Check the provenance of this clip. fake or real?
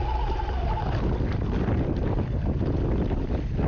real